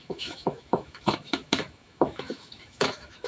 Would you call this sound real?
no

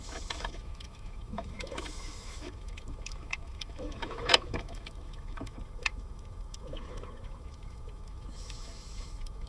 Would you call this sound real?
no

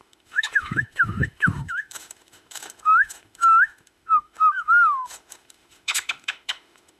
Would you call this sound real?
no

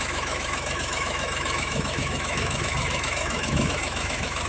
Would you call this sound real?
no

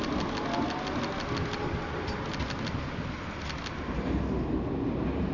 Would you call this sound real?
yes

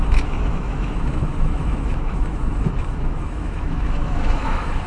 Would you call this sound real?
no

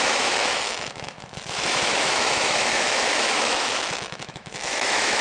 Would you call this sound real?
no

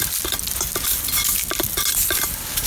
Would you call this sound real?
yes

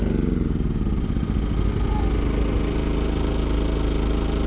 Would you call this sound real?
yes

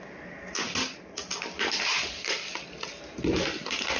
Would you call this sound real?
yes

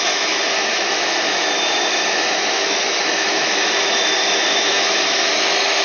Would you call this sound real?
no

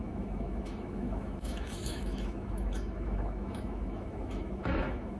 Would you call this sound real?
no